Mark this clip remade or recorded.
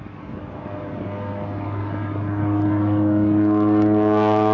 remade